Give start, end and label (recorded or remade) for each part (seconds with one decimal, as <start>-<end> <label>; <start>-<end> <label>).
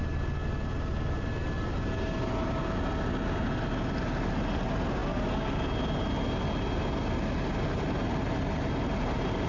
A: 0.0-9.5 recorded